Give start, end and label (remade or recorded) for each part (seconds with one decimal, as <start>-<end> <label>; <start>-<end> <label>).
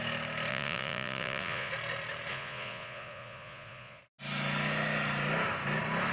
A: 0.0-0.5 recorded; 0.5-1.7 remade; 1.7-2.3 recorded; 2.3-4.0 remade; 4.0-6.1 recorded